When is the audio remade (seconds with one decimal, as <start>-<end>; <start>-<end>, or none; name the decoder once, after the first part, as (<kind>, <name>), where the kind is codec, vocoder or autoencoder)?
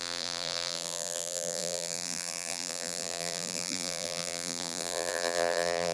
0.0-5.9 (vocoder, BigVGAN v2)